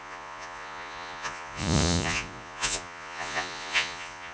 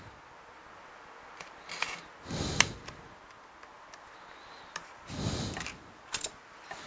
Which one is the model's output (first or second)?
first